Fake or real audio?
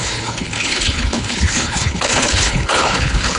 fake